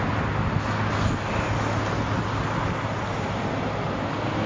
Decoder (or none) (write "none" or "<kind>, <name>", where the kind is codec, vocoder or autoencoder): none